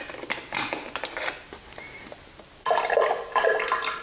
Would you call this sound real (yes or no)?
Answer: yes